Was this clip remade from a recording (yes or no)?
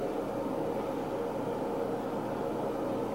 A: no